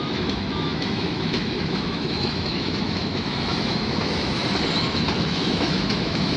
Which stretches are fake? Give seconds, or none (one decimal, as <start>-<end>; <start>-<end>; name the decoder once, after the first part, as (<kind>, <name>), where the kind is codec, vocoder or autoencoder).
0.0-4.4 (autoencoder, DAC-VAE); 5.2-6.4

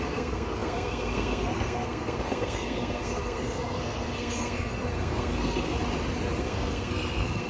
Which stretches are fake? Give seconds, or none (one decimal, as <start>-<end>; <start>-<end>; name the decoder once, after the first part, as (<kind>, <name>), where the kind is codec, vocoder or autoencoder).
0.0-5.7 (codec, SNAC); 6.4-7.5

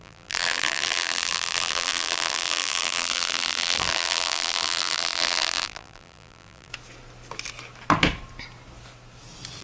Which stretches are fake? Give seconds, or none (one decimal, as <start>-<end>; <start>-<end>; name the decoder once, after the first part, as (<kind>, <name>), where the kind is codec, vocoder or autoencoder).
0.0-6.7 (vocoder, BigVGAN v2)

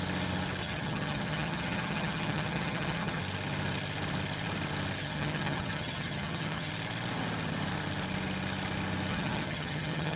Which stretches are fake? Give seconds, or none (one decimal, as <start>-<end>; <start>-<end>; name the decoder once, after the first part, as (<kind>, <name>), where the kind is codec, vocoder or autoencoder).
0.6-3.2 (vocoder, HiFi-GAN); 5.0-6.7; 9.1-10.2

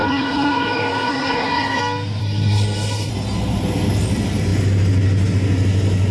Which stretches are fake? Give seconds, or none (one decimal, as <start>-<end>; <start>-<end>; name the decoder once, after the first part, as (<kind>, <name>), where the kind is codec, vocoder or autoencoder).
0.0-1.8 (codec, SNAC); 2.2-3.1

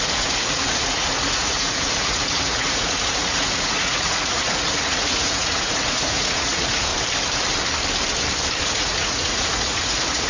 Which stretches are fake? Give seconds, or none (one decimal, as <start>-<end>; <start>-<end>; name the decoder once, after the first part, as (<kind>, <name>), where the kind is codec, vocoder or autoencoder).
0.0-6.9 (vocoder, Vocos); 8.6-10.3